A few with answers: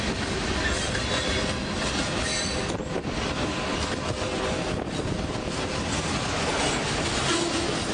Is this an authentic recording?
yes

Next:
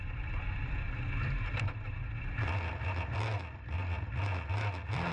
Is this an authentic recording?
yes